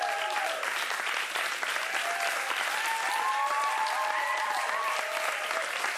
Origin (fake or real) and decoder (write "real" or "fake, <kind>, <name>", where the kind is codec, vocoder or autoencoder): real